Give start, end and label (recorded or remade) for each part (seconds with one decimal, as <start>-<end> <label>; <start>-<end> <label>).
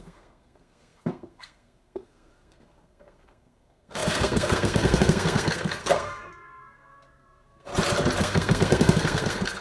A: 0.0-7.7 remade; 7.7-8.2 recorded; 8.2-9.6 remade